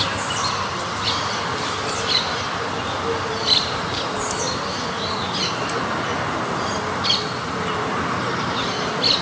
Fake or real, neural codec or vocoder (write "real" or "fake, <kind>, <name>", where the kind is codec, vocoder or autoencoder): real